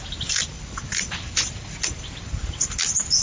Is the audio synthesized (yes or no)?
no